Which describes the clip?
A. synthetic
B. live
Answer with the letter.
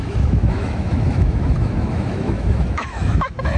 A